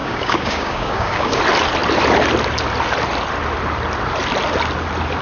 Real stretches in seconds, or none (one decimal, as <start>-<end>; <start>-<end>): 1.4-5.2